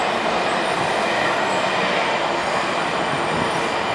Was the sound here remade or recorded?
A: recorded